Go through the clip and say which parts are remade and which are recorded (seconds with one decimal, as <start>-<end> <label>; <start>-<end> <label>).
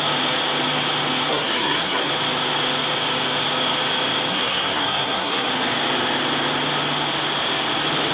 0.0-1.3 recorded; 1.3-2.1 remade; 2.1-4.3 recorded; 4.3-5.5 remade; 5.5-8.1 recorded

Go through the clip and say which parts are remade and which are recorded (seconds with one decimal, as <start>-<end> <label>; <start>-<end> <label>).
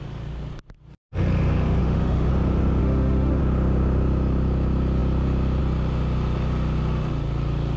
0.0-1.8 recorded; 1.8-2.3 remade; 2.3-2.8 recorded; 2.8-3.4 remade; 3.4-7.8 recorded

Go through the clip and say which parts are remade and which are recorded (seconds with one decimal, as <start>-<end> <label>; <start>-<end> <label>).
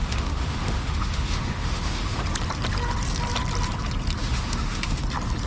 0.0-2.2 remade; 2.2-4.2 recorded; 4.2-5.0 remade; 5.0-5.5 recorded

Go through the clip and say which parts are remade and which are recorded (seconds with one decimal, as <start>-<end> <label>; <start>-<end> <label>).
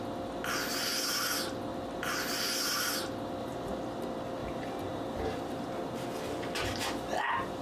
0.0-1.7 recorded; 1.7-2.3 remade; 2.3-4.4 recorded; 4.4-5.4 remade; 5.4-7.6 recorded